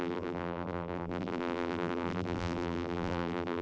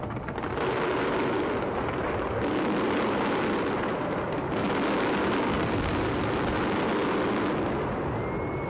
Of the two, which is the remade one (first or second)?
first